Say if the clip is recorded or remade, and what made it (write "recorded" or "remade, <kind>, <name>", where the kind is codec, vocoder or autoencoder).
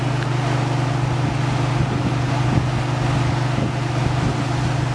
recorded